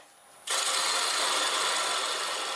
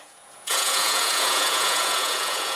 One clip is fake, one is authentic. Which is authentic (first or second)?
first